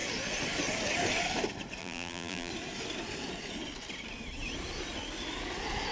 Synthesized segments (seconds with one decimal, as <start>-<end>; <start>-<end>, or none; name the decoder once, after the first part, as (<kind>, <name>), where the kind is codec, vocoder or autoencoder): 1.8-2.5 (vocoder, BigVGAN v2)